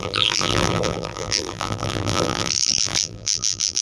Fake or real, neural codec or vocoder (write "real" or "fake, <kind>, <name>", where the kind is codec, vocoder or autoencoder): fake, vocoder, BigVGAN v2